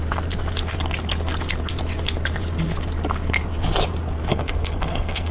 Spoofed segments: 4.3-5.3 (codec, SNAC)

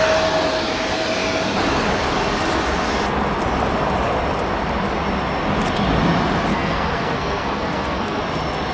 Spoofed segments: 6.5-8.2 (codec, SNAC)

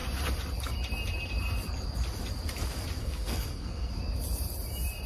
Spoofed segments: 3.0-3.9 (codec, SNAC)

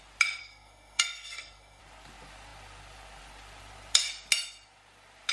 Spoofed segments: 0.4-1.8 (codec, SNAC)

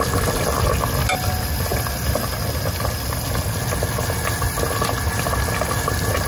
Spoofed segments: none

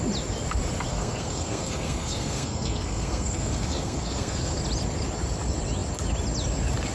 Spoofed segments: 0.9-4.6 (codec, SNAC)

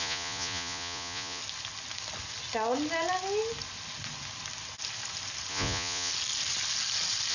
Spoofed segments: 0.0-1.4 (vocoder, Vocos); 5.5-6.1

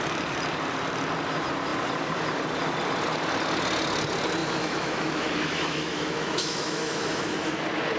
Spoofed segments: 4.4-7.6 (autoencoder, DAC-VAE)